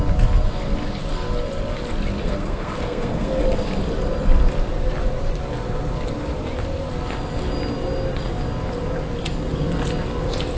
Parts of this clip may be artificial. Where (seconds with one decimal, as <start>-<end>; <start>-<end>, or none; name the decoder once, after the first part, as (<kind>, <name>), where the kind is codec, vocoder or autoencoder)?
2.2-3.4 (codec, SNAC)